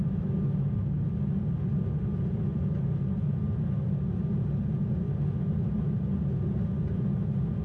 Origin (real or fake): real